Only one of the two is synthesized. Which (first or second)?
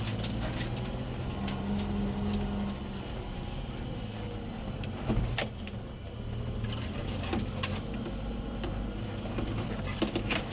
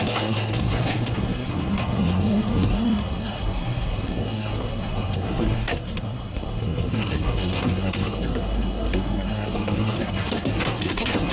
second